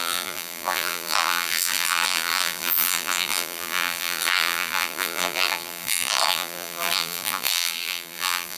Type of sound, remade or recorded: remade